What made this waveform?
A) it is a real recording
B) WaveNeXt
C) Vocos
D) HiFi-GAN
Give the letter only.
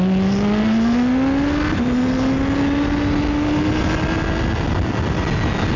A